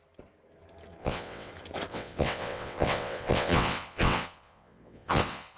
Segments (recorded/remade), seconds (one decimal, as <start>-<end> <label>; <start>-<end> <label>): 0.0-1.0 recorded; 1.0-1.5 remade; 1.5-1.9 recorded; 1.9-5.6 remade